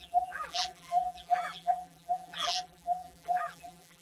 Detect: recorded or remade remade